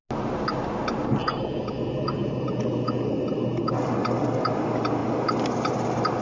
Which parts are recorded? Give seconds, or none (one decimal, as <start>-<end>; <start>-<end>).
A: 0.0-6.2